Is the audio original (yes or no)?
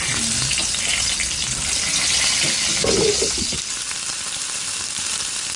yes